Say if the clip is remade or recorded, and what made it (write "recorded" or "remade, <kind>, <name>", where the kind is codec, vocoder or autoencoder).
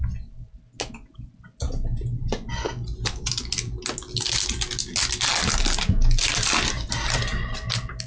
recorded